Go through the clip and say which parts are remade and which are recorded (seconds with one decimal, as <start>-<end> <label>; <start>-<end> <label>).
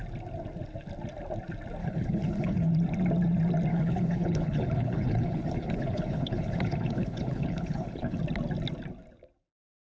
0.0-1.8 recorded; 1.8-2.7 remade; 2.7-3.7 recorded; 3.7-8.2 remade; 8.2-9.9 recorded